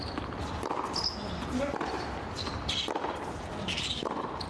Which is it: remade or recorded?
recorded